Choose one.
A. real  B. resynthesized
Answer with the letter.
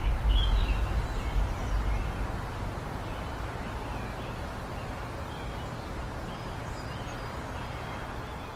A